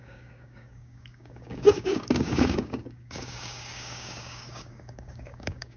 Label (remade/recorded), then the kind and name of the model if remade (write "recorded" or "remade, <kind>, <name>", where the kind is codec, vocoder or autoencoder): remade, codec, DAC